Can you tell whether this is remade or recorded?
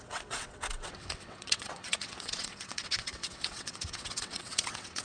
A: remade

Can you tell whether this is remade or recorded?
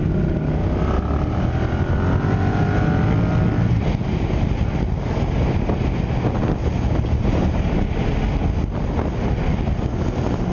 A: recorded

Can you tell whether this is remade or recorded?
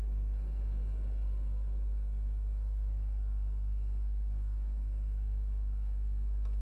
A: remade